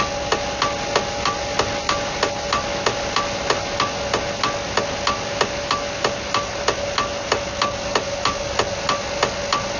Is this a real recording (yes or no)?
yes